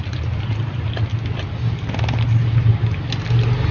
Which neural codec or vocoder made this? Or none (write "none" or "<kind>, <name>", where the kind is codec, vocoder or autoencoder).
none